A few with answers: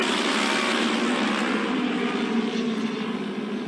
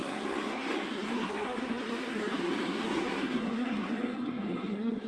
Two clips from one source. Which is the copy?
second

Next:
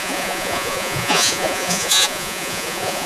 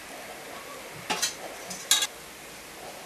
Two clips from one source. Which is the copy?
first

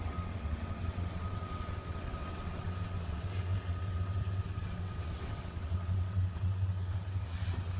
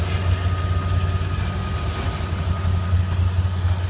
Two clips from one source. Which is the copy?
first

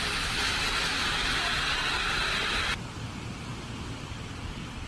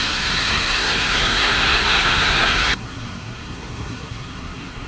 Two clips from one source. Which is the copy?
second